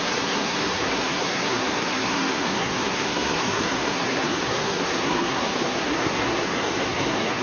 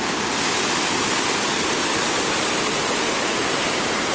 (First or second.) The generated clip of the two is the first